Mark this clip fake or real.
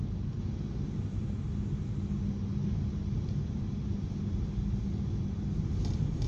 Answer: real